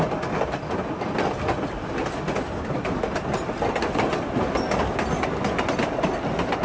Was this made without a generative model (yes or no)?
yes